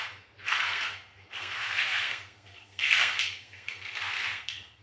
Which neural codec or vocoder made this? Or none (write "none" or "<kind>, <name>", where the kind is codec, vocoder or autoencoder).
codec, SNAC